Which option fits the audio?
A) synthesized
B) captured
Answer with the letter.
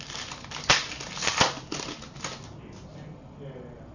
B